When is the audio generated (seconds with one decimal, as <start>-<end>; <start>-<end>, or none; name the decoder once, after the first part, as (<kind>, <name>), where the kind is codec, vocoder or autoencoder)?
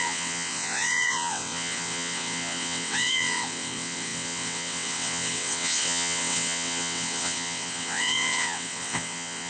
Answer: 0.0-9.5 (vocoder, WaveNeXt)